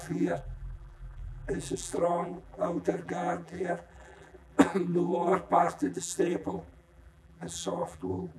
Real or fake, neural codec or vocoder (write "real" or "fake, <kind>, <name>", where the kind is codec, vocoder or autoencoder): fake, vocoder, BigVGAN v2